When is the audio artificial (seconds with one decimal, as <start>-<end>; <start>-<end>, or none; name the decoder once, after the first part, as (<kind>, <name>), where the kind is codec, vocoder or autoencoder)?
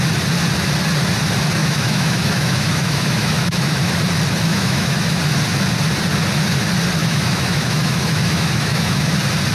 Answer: 1.6-3.9 (autoencoder, DAC-VAE); 4.5-5.2; 7.0-9.1